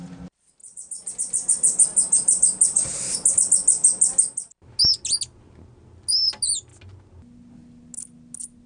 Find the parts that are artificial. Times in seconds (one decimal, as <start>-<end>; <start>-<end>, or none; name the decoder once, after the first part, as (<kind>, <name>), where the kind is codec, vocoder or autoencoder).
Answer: 0.6-1.1 (vocoder, BigVGAN v2); 1.9-3.3